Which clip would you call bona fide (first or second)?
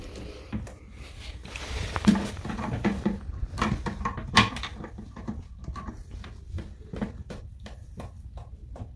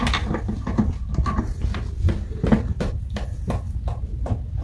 second